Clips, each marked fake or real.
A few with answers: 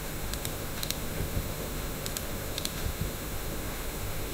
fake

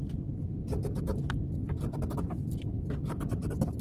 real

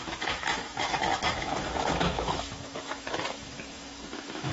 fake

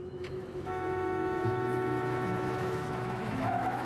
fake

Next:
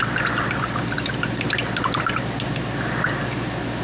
real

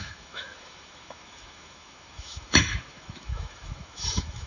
fake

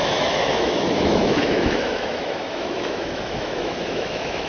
fake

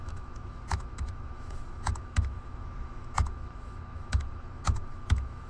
fake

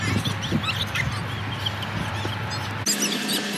real